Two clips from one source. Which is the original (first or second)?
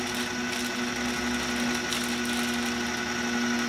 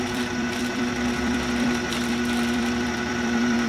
first